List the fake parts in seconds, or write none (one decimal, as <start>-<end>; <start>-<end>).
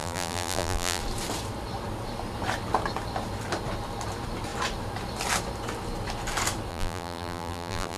0.0-1.0; 6.7-8.0